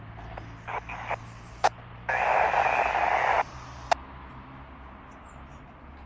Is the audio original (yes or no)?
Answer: yes